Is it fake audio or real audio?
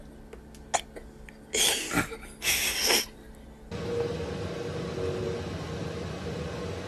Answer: real